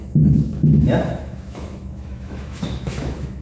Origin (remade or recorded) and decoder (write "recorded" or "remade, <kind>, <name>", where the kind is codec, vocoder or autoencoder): remade, autoencoder, DAC-VAE